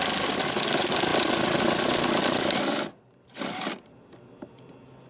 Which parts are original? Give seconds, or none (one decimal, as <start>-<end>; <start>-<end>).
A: 0.0-5.1